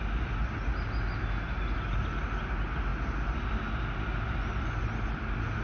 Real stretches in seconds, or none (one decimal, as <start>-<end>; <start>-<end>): 0.0-5.6